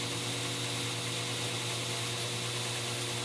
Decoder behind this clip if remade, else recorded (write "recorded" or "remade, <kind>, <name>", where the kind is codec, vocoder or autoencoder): recorded